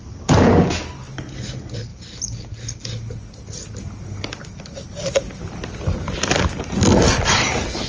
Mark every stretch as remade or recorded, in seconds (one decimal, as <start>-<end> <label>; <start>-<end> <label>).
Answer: 0.0-7.9 recorded